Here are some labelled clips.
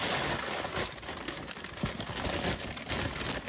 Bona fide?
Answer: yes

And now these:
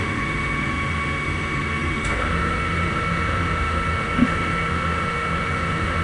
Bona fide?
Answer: no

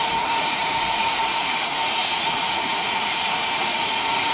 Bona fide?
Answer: no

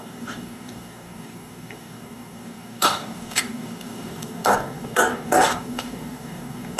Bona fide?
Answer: no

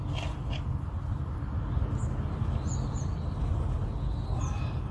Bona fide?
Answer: yes